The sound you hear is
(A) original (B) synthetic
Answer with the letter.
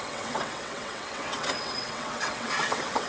B